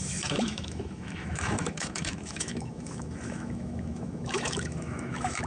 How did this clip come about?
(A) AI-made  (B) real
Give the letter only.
A